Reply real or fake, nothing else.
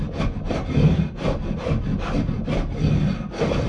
real